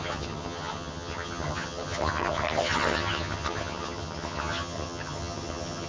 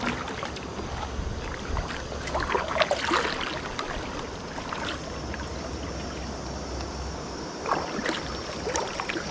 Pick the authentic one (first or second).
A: second